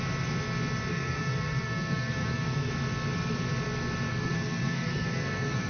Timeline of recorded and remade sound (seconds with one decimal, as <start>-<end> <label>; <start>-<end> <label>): 0.0-0.9 recorded; 0.9-2.7 remade; 2.7-4.1 recorded; 4.1-5.7 remade